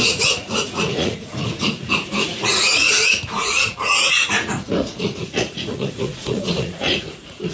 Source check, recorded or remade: remade